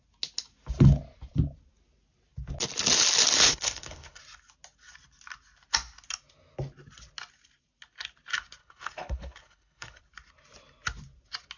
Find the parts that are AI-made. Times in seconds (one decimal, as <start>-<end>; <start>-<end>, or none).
3.5-4.2; 8.6-10.0